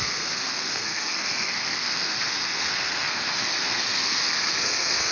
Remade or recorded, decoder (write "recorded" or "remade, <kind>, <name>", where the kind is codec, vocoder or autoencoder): remade, codec, SNAC